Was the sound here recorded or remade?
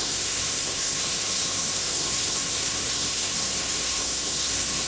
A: remade